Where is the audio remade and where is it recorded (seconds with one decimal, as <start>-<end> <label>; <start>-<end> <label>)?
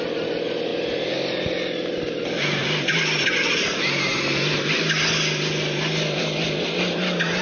0.0-7.4 recorded